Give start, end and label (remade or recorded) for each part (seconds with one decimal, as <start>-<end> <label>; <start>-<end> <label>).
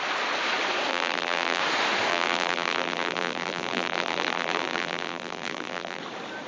0.0-0.9 recorded; 0.9-1.6 remade; 1.6-2.1 recorded; 2.1-6.0 remade; 6.0-6.5 recorded